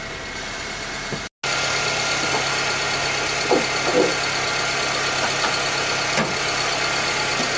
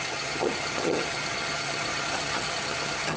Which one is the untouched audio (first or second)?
first